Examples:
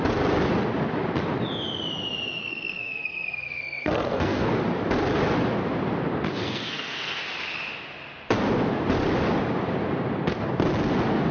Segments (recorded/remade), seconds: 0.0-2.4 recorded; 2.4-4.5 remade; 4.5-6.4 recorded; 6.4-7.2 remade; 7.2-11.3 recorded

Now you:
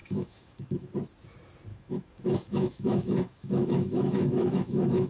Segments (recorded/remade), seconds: 0.0-0.9 remade; 0.9-1.7 recorded; 1.7-5.1 remade

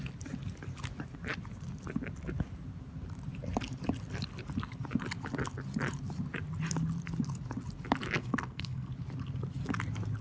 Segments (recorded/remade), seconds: 0.0-8.2 recorded; 8.2-8.9 remade; 8.9-10.2 recorded

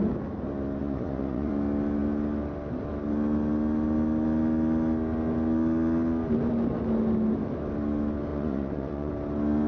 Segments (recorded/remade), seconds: 0.0-0.8 recorded; 0.8-1.5 remade; 1.5-8.3 recorded; 8.3-9.1 remade; 9.1-9.7 recorded

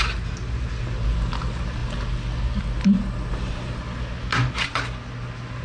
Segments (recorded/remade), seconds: 0.0-5.6 recorded